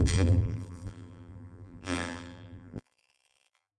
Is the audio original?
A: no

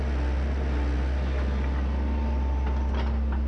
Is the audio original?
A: yes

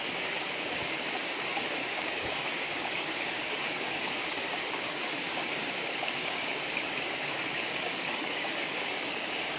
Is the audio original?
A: no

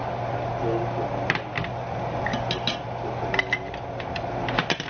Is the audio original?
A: yes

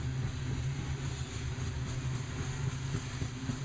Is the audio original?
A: yes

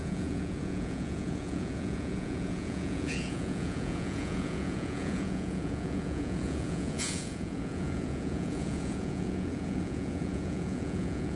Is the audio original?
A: no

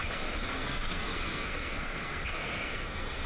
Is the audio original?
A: no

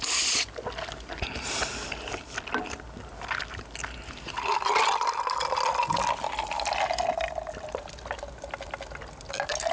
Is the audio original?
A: yes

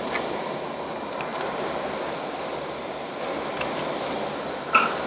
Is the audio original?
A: yes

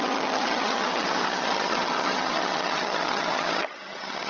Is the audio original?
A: no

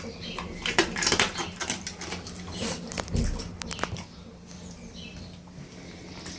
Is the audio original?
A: yes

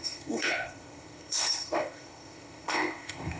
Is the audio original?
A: no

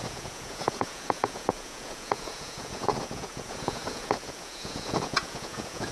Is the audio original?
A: no